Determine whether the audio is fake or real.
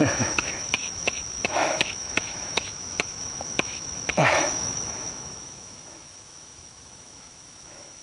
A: fake